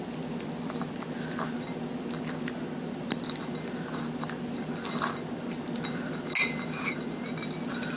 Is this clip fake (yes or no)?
no